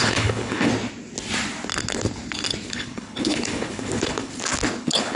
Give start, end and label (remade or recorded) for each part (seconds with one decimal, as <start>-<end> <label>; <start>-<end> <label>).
0.0-0.7 remade; 0.7-2.7 recorded; 2.7-4.3 remade; 4.3-4.8 recorded; 4.8-5.2 remade